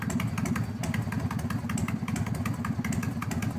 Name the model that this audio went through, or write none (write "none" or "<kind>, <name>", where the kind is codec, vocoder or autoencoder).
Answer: none